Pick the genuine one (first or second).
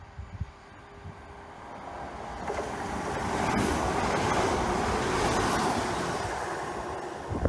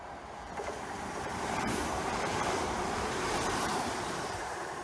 first